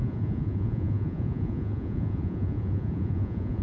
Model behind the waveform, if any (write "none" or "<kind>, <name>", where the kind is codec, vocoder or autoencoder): vocoder, Vocos